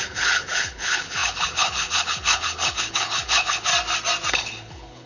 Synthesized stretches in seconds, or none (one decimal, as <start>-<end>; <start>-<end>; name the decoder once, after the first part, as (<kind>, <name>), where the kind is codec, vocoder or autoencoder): 0.0-3.7 (codec, HILCodec); 4.3-5.1